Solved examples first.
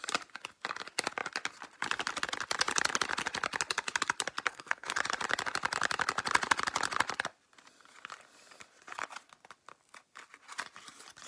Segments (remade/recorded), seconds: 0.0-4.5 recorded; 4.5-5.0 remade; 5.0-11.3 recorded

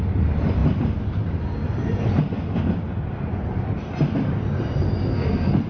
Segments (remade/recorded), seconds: 0.0-5.1 recorded; 5.1-5.7 remade

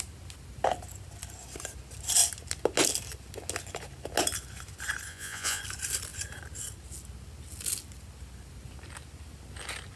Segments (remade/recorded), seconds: 0.0-5.1 recorded; 5.1-5.6 remade; 5.6-10.0 recorded